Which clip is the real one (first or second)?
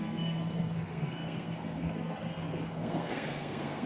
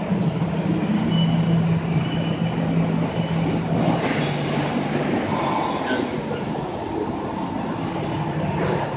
second